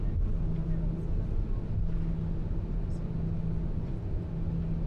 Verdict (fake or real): real